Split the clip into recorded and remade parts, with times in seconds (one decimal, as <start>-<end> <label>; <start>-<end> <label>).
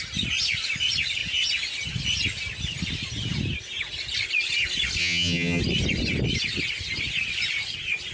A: 0.0-5.0 recorded; 5.0-5.6 remade; 5.6-8.1 recorded